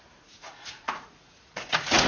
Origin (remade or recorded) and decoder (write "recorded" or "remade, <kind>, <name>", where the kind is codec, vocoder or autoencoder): remade, vocoder, Vocos